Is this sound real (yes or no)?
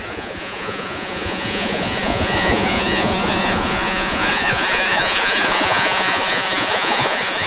no